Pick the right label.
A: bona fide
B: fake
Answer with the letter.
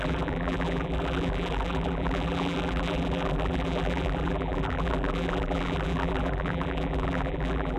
B